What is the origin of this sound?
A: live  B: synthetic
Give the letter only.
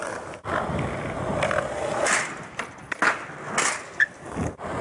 A